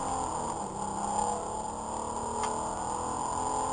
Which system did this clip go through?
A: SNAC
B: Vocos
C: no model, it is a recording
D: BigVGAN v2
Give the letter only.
C